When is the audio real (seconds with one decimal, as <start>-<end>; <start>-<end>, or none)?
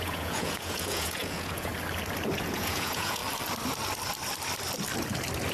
1.7-2.4; 3.2-5.5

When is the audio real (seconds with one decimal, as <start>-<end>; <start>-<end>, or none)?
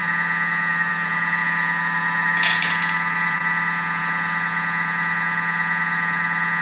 none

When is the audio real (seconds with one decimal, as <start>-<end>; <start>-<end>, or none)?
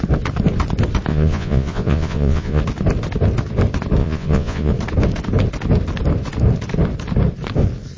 0.0-1.1; 2.6-4.0; 4.7-8.0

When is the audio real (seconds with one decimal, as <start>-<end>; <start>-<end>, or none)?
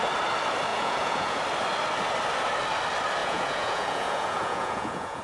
0.0-0.7; 1.4-3.2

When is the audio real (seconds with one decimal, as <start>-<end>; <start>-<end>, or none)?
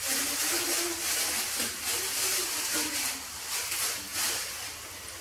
0.0-5.2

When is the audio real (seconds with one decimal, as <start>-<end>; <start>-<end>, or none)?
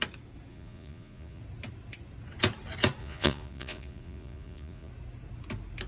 0.0-0.5; 1.4-3.0; 4.9-5.9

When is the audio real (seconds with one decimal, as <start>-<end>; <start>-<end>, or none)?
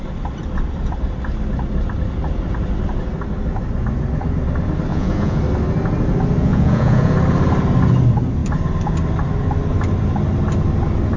0.0-4.9; 5.4-6.4; 7.1-11.2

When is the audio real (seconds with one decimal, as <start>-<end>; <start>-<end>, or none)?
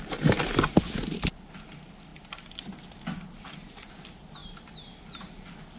0.0-5.8